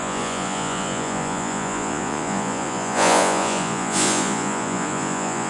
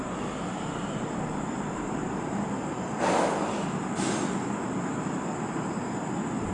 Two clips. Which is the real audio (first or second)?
second